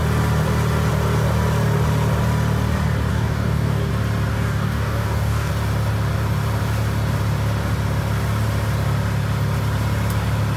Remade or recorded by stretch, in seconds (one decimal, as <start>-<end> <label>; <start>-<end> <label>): 0.0-3.1 recorded; 3.1-3.9 remade; 3.9-4.3 recorded; 4.3-5.5 remade; 5.5-10.6 recorded